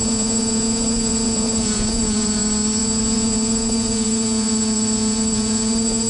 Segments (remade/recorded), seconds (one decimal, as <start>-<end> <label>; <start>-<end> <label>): 0.0-2.4 remade; 2.4-2.8 recorded; 2.8-6.1 remade